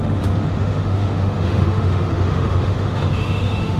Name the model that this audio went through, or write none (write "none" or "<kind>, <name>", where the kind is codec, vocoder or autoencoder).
autoencoder, DAC-VAE